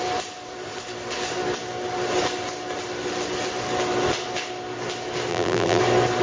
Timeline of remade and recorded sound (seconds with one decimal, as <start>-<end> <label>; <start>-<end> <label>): 0.0-5.3 recorded; 5.3-5.8 remade; 5.8-6.2 recorded